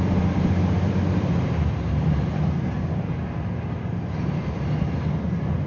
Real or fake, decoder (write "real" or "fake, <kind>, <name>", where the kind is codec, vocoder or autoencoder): real